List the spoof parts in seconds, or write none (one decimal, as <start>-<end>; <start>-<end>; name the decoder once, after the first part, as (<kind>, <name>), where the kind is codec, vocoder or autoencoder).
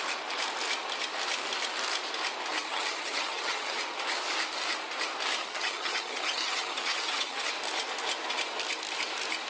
2.5-3.8 (vocoder, HiFi-GAN); 5.4-7.5